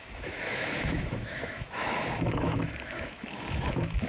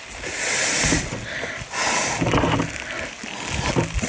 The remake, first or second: first